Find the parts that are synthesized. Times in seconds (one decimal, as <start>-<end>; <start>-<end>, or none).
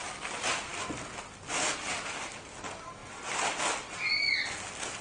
none